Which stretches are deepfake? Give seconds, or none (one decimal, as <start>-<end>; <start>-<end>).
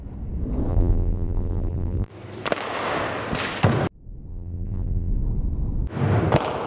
0.7-2.1; 4.3-5.1